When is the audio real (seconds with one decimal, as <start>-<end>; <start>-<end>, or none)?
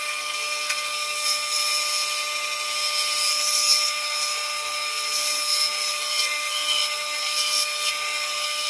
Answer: 1.7-3.3